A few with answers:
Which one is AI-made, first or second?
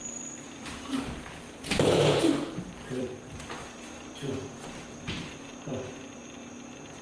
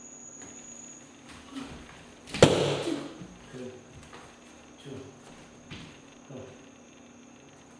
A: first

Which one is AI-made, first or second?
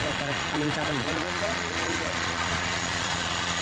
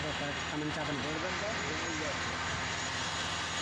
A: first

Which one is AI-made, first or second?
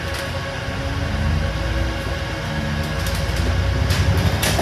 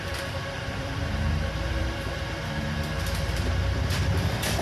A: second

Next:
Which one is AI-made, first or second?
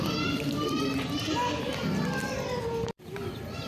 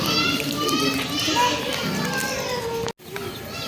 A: first